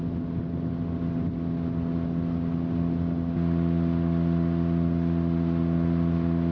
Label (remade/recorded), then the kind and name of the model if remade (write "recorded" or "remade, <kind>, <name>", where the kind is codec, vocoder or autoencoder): recorded